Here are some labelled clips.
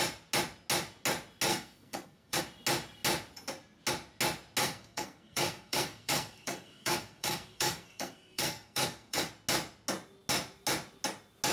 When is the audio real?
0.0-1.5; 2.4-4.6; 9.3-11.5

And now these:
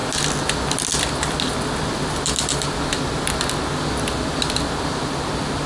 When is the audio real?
0.0-5.7